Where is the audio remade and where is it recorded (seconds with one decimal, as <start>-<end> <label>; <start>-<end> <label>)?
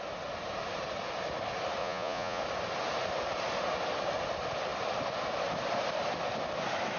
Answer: 0.0-1.8 recorded; 1.8-2.4 remade; 2.4-7.0 recorded